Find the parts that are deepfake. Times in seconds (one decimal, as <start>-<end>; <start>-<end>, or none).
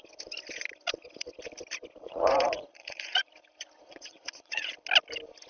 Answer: 2.0-3.3; 3.8-4.7